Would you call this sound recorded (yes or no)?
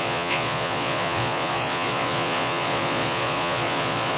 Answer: no